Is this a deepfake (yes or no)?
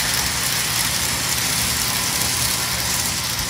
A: no